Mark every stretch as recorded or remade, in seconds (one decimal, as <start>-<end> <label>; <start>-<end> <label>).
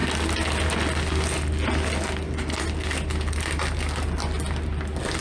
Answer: 0.0-5.2 recorded